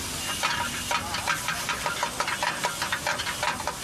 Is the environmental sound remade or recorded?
recorded